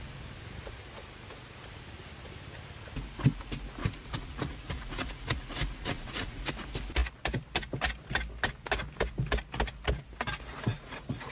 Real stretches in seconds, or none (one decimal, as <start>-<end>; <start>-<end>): 0.0-3.8; 6.5-10.7